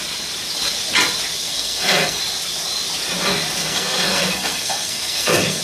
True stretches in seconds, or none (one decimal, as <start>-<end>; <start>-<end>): 0.0-1.4; 2.2-3.6